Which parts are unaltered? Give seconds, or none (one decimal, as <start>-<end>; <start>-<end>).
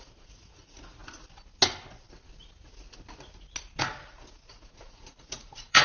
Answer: 1.0-4.5